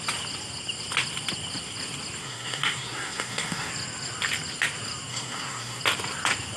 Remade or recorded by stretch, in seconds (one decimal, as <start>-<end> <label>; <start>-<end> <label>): 0.0-2.2 recorded; 2.2-3.7 remade; 3.7-5.1 recorded; 5.1-5.8 remade; 5.8-6.6 recorded